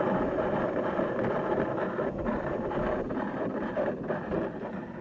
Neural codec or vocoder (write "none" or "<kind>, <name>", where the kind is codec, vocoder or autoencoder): vocoder, BigVGAN v2